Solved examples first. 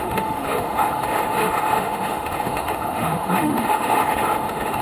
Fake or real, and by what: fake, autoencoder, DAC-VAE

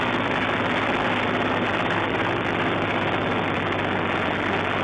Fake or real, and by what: real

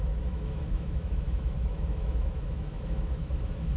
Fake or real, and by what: fake, autoencoder, DAC-VAE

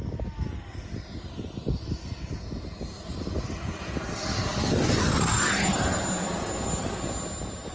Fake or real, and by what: real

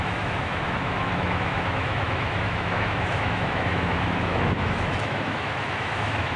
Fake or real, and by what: fake, autoencoder, DAC-VAE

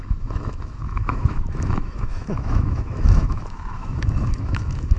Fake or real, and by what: fake, autoencoder, DAC-VAE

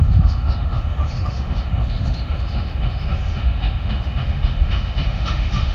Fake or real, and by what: fake, autoencoder, DAC-VAE